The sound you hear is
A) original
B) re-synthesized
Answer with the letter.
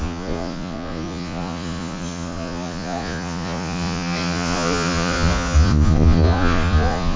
B